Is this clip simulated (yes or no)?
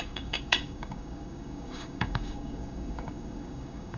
yes